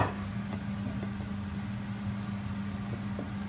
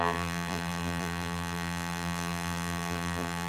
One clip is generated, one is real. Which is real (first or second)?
first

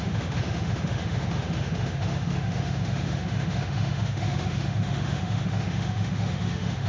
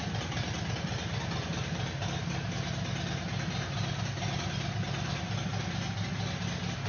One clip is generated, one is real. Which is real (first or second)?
second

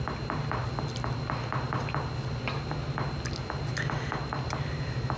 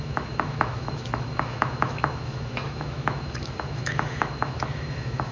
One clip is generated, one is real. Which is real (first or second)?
first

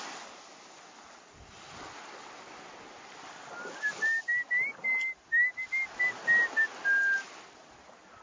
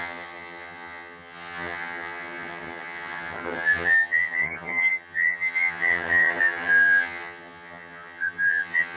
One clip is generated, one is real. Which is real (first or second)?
first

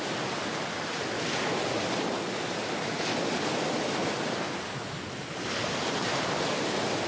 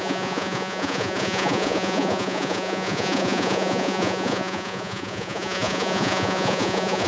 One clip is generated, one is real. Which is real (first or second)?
first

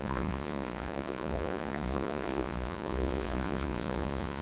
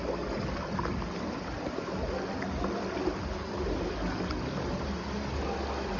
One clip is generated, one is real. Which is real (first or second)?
second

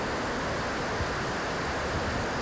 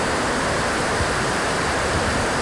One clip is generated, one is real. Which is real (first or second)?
first